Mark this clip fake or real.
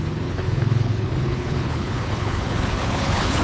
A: fake